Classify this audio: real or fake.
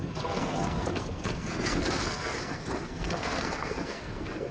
fake